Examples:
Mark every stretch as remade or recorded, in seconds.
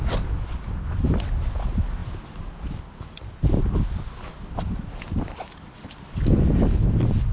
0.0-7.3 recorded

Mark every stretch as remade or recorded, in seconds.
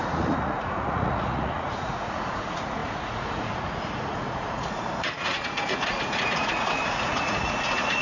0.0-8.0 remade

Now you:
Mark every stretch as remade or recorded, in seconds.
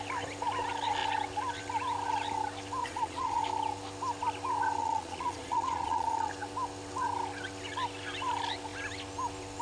0.0-2.8 recorded; 2.8-3.4 remade; 3.4-4.8 recorded; 4.8-6.3 remade; 6.3-9.6 recorded